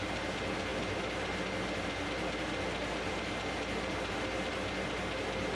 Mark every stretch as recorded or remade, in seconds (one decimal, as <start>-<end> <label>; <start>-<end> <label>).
0.0-5.6 recorded